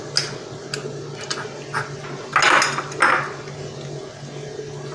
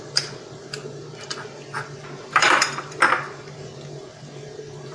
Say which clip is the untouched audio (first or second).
first